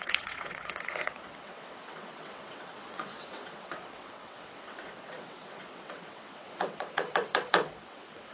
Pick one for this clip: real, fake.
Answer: fake